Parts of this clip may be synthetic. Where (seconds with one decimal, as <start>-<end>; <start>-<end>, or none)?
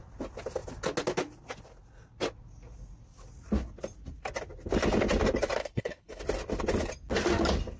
5.6-6.2